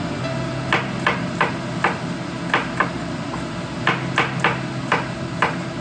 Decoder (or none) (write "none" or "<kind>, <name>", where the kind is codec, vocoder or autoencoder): none